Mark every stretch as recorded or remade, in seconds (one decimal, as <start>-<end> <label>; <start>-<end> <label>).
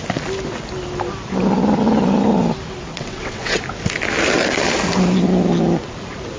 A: 0.0-2.9 recorded; 2.9-3.6 remade; 3.6-6.4 recorded